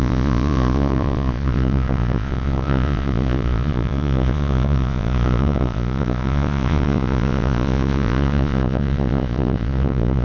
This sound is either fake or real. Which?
fake